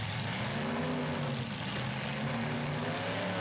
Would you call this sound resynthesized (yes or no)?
no